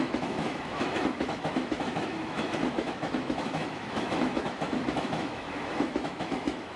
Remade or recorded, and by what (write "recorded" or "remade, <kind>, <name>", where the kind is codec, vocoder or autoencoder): remade, autoencoder, DAC-VAE